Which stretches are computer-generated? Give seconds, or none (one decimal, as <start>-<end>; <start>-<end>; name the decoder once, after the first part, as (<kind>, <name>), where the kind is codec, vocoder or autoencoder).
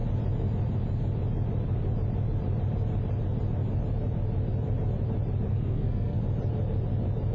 5.5-6.2 (codec, SNAC)